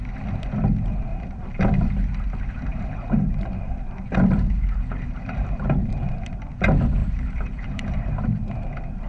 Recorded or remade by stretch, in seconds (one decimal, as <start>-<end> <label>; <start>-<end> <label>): 0.0-1.1 recorded; 1.1-1.9 remade; 1.9-2.7 recorded; 2.7-6.5 remade; 6.5-7.0 recorded; 7.0-9.1 remade